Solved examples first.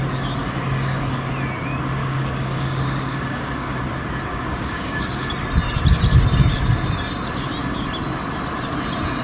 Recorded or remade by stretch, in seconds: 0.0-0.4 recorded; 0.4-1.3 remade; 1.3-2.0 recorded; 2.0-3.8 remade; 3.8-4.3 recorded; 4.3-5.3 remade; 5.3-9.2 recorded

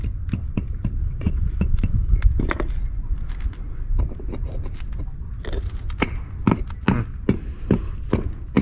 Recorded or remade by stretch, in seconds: 0.0-1.0 recorded; 1.0-2.0 remade; 2.0-8.6 recorded

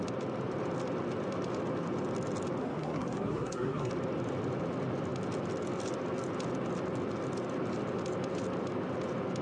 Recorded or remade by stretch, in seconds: 0.0-2.6 recorded; 2.6-3.9 remade; 3.9-9.4 recorded

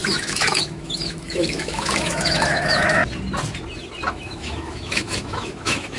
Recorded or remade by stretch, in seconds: 0.0-3.0 remade; 3.0-4.1 recorded; 4.1-6.0 remade

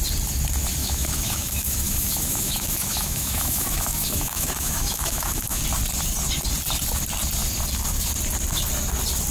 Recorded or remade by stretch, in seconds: 0.0-0.8 recorded; 0.8-5.6 remade; 5.6-9.3 recorded

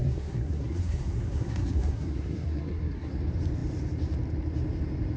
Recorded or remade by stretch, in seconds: 0.0-3.1 remade; 3.1-5.2 recorded